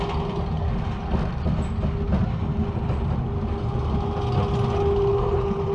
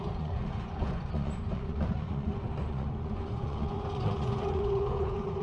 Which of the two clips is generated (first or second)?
second